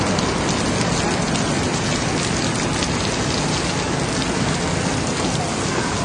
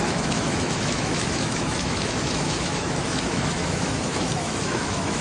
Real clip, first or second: first